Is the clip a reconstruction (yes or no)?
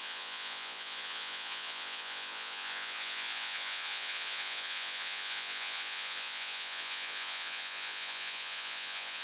yes